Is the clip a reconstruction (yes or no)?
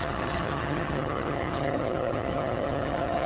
yes